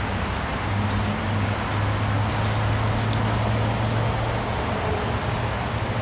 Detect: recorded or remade recorded